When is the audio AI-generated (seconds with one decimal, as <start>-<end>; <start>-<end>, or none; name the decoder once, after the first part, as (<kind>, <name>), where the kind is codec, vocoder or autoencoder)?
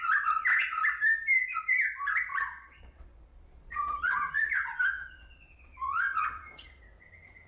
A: 2.3-6.8 (vocoder, Vocos)